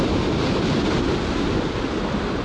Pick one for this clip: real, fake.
real